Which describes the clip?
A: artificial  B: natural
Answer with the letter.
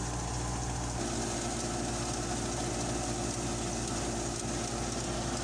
B